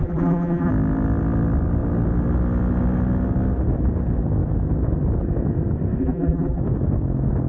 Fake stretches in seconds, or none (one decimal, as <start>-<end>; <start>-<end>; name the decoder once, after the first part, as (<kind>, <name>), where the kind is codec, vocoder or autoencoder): 0.0-0.7 (vocoder, BigVGAN v2); 6.0-6.6